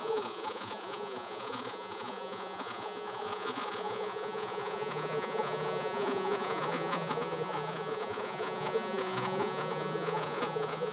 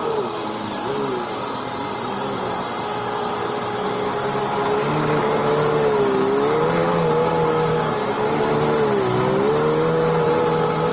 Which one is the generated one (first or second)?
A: first